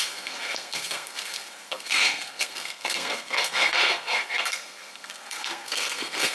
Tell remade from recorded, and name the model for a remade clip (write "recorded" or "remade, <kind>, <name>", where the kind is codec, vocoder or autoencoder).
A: remade, codec, SNAC